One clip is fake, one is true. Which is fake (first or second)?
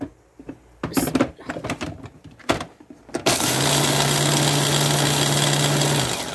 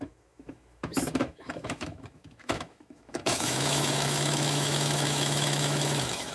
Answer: second